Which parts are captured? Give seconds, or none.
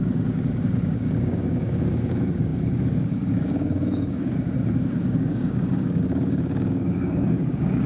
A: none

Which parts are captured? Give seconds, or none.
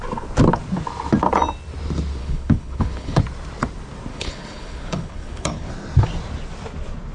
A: 0.0-2.2; 3.2-4.1; 5.7-7.1